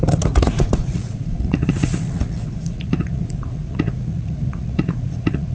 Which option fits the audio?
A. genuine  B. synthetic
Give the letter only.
B